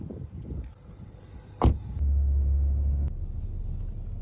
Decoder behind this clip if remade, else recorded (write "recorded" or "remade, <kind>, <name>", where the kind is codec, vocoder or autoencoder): recorded